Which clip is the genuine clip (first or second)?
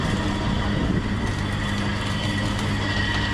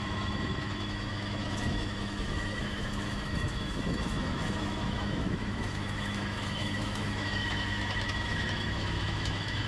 first